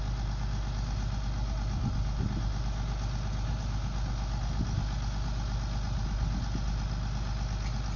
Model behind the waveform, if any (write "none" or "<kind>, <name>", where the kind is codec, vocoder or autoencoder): none